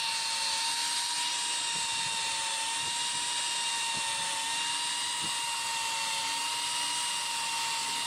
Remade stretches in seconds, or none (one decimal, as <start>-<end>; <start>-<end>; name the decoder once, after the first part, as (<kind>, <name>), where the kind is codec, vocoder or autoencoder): none